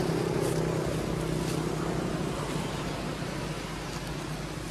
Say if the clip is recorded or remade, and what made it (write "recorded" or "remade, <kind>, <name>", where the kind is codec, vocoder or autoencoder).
recorded